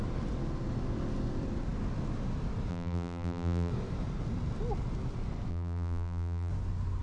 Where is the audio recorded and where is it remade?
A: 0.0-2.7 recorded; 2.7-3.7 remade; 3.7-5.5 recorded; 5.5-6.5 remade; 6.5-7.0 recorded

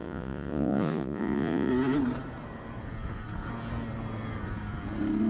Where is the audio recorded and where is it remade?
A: 0.0-1.7 remade; 1.7-5.3 recorded

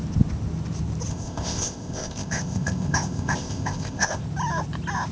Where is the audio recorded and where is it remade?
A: 0.0-1.1 recorded; 1.1-4.2 remade; 4.2-5.1 recorded

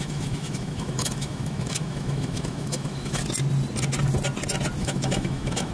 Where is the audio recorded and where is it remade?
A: 0.0-3.2 remade; 3.2-4.8 recorded; 4.8-5.7 remade

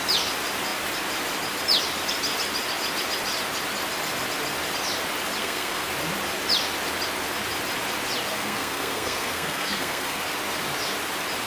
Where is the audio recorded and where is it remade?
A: 0.0-5.4 recorded; 5.4-5.9 remade; 5.9-8.3 recorded; 8.3-10.2 remade; 10.2-11.5 recorded